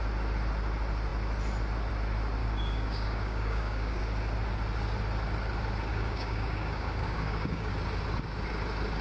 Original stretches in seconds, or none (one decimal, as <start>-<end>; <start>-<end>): 0.0-2.4; 4.0-5.9; 7.7-9.0